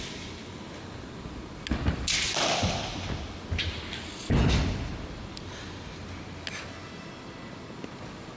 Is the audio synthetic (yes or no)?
no